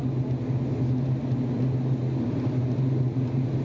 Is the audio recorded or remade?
recorded